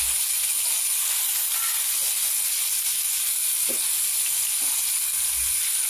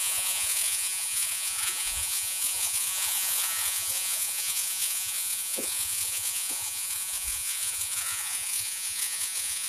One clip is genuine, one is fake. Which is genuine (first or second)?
first